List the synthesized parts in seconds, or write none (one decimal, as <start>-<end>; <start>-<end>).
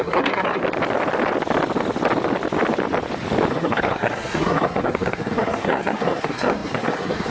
0.0-0.6; 3.5-7.3